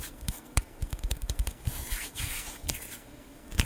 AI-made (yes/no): yes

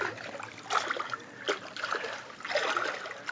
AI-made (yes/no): no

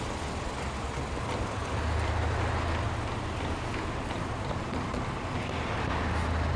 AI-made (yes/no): no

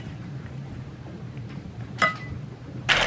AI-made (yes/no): yes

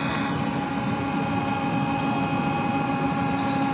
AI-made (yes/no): no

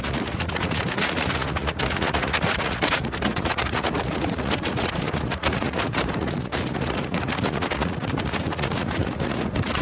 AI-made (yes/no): yes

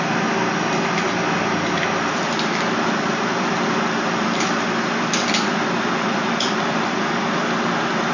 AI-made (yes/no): yes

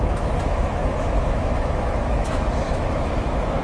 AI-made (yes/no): yes